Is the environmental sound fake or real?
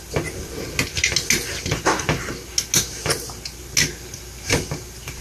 real